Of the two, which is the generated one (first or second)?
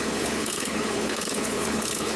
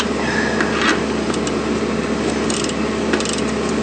first